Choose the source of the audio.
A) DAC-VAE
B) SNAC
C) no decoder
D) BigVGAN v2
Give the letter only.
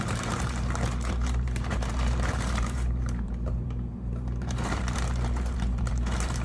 D